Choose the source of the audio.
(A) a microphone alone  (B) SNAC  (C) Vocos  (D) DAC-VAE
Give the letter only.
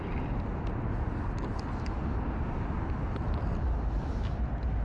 A